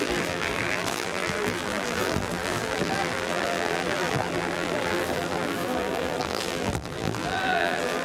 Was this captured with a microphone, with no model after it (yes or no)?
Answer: no